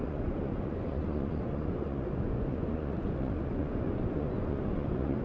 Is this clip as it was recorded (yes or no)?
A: no